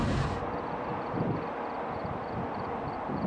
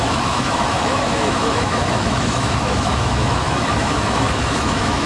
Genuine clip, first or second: first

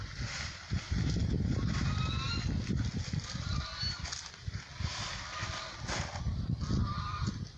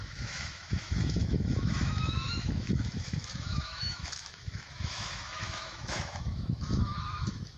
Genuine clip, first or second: first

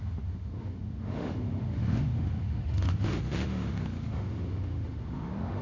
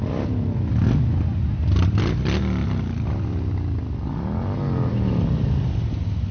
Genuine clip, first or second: second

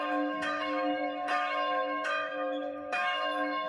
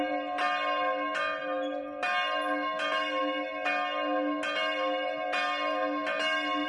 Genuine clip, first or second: second